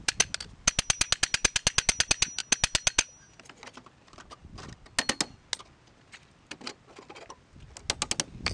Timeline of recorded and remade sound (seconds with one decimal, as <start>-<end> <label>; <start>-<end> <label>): 0.0-8.5 recorded